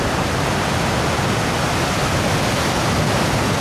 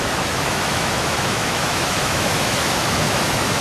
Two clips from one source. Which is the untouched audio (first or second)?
first